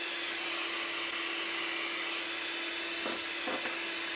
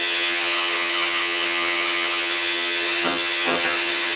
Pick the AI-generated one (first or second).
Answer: second